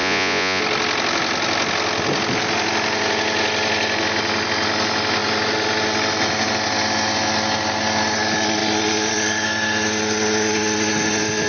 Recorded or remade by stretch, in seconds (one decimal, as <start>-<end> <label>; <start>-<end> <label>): 0.0-0.6 remade; 0.6-11.5 recorded